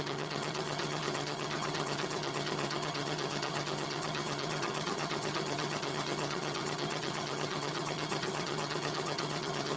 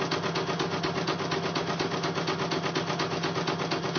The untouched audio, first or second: second